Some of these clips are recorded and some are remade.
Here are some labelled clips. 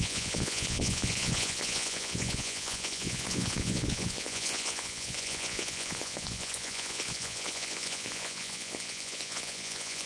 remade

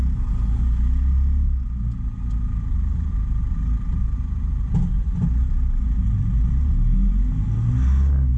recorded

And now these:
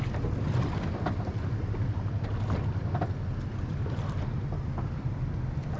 recorded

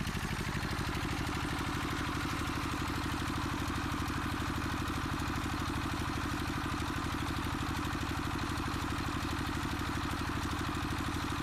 recorded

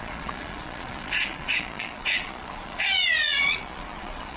remade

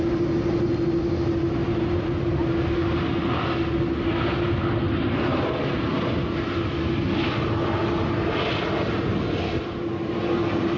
recorded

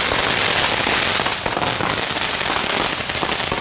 recorded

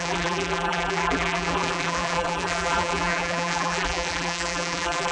remade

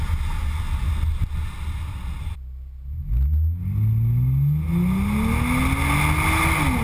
recorded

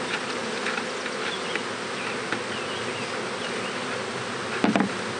recorded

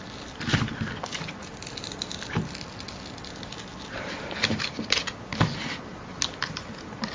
recorded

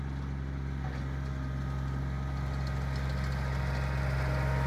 recorded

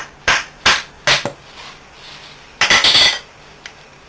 recorded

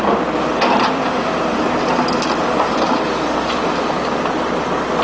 remade